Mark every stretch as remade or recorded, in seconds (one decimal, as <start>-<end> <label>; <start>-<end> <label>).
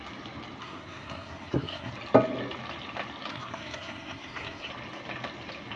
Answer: 0.0-0.6 recorded; 0.6-1.9 remade; 1.9-3.3 recorded; 3.3-4.7 remade; 4.7-5.8 recorded